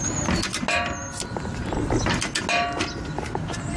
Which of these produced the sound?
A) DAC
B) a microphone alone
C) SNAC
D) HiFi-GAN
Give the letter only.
B